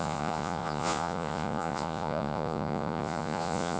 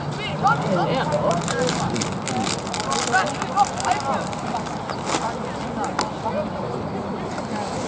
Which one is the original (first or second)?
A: second